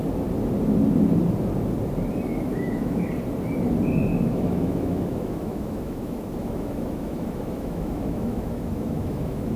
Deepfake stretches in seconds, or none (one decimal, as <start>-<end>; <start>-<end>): 2.3-3.1; 4.1-9.6